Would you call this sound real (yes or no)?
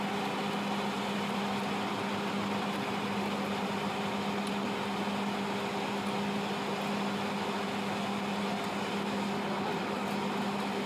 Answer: yes